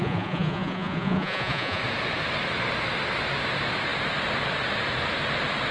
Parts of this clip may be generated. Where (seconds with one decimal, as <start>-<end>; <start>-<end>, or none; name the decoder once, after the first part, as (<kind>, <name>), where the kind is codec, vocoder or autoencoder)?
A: 0.0-1.8 (vocoder, Vocos)